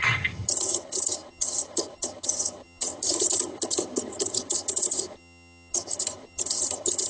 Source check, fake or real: fake